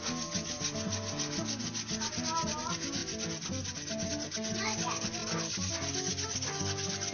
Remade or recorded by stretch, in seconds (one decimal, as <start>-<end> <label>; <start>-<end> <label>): 0.0-7.1 recorded